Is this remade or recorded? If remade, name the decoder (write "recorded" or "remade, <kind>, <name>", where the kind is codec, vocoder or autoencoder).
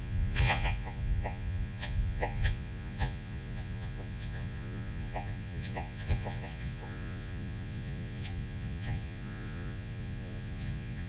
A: remade, vocoder, Vocos